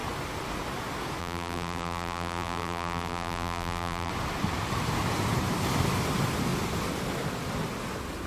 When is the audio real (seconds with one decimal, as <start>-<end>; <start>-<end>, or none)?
0.0-1.2; 4.1-8.3